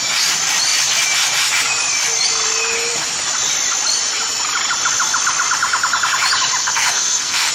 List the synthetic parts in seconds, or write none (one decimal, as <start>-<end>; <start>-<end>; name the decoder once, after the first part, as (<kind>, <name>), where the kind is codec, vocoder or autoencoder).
6.6-7.5 (codec, SNAC)